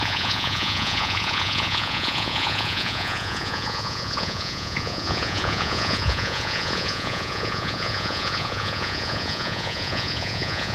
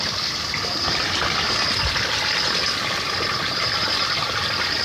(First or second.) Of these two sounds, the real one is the second